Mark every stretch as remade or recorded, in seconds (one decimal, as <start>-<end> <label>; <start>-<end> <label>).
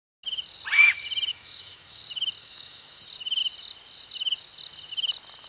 0.0-1.3 recorded; 1.3-2.0 remade; 2.0-2.4 recorded; 2.4-3.0 remade; 3.0-5.5 recorded